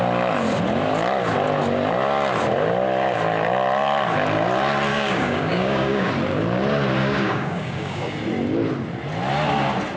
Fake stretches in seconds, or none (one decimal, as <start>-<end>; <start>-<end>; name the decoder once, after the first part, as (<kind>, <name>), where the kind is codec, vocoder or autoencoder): 4.9-6.1 (codec, DAC); 7.0-8.2